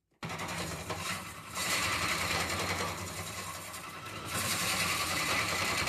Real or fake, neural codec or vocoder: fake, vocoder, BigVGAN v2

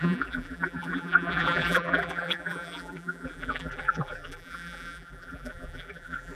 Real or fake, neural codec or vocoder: fake, vocoder, BigVGAN v2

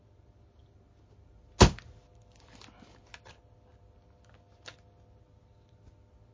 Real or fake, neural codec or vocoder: real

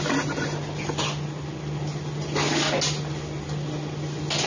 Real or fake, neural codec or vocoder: real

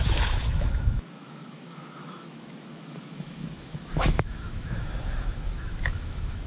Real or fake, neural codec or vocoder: fake, autoencoder, DAC-VAE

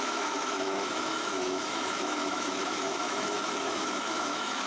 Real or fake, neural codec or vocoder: fake, autoencoder, DAC-VAE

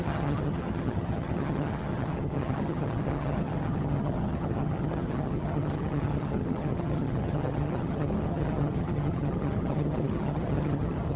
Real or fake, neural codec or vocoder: fake, vocoder, HiFi-GAN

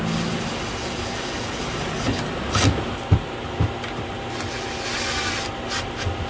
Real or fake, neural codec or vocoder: real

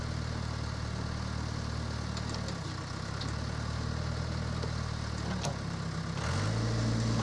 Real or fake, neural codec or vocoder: real